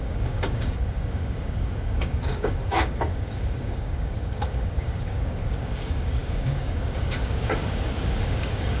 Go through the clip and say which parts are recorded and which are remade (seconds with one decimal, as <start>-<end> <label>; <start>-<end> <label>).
0.0-8.8 remade